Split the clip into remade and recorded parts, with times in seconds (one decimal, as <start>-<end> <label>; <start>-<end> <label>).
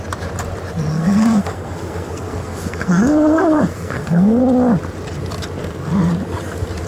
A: 0.0-0.9 recorded; 0.9-4.4 remade; 4.4-5.6 recorded; 5.6-6.1 remade; 6.1-6.9 recorded